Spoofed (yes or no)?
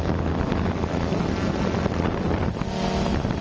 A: no